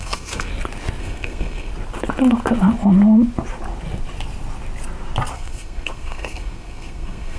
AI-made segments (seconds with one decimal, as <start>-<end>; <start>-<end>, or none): 0.0-0.5; 1.0-1.7; 5.3-7.4